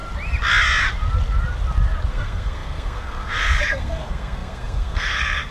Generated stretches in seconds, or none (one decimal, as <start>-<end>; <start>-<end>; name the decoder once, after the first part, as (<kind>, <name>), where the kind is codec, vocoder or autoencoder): 2.1-5.5 (codec, SNAC)